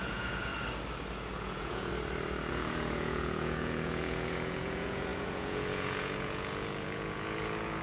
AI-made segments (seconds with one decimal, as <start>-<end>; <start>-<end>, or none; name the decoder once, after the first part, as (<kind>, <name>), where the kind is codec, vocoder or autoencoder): 0.0-0.5 (vocoder, Vocos); 1.4-1.9; 2.5-7.8